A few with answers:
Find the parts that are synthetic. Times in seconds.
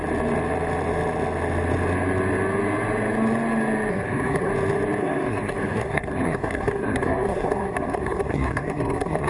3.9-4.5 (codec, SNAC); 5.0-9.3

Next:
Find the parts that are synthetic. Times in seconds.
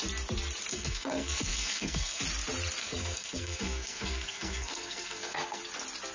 0.7-2.2 (codec, SNAC); 2.8-5.6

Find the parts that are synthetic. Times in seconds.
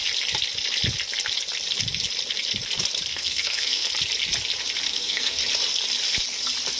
3.1-3.9 (codec, SNAC); 4.9-5.4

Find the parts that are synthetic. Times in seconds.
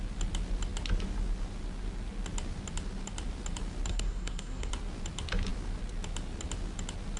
3.9-4.7 (codec, SNAC)